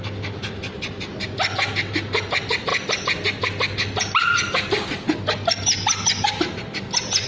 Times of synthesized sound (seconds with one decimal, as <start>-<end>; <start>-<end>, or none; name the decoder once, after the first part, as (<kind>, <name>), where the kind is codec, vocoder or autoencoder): none